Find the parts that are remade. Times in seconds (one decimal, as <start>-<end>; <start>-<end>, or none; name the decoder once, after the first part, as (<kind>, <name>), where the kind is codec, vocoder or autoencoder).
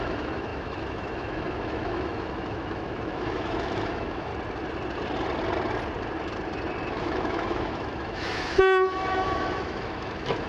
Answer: 0.0-4.3 (autoencoder, DAC-VAE); 6.9-10.5